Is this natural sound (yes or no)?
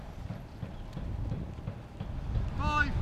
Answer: yes